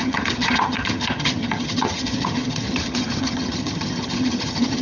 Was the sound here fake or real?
fake